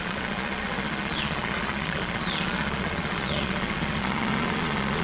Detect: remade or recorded remade